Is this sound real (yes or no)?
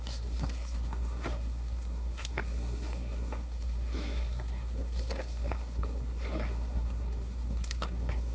no